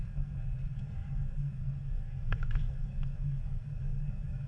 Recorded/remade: remade